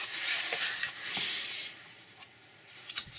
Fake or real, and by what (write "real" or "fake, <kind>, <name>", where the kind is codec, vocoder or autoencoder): fake, vocoder, Vocos